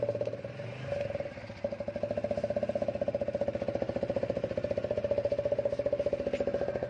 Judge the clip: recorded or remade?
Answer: recorded